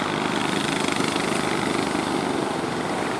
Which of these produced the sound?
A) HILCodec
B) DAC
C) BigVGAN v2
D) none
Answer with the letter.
D